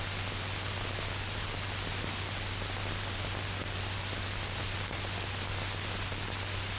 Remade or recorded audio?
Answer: recorded